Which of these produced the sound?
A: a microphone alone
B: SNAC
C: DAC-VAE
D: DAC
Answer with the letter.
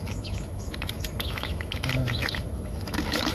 C